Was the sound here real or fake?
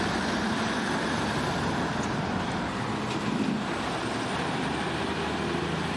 real